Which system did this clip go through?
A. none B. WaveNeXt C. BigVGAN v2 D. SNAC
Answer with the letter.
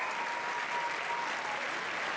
A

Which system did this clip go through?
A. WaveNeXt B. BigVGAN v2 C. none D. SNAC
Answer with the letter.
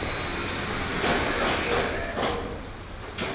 B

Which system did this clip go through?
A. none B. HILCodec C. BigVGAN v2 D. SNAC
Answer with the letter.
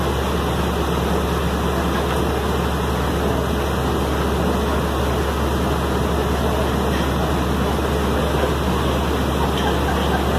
A